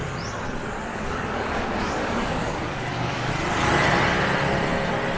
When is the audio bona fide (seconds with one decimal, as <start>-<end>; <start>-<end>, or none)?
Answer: 0.0-0.9; 3.3-5.2